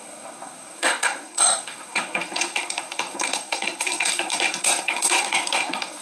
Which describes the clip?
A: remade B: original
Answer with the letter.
A